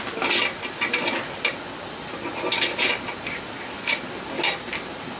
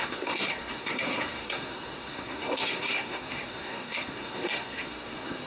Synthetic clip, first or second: second